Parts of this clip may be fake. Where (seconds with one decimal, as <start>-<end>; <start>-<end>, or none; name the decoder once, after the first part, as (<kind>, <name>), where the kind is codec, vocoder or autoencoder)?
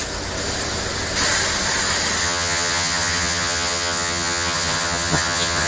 2.2-5.7 (vocoder, HiFi-GAN)